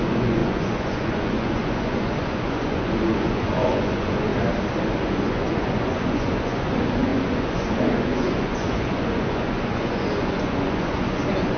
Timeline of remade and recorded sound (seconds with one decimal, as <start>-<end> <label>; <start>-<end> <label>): 0.0-4.3 remade; 4.3-5.0 recorded; 5.0-11.6 remade